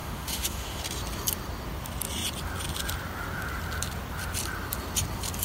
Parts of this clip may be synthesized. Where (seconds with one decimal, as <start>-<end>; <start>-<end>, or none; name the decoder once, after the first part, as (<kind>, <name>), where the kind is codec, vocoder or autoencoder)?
0.0-0.8 (autoencoder, DAC-VAE)